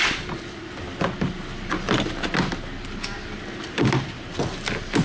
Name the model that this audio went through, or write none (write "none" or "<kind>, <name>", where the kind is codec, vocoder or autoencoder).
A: none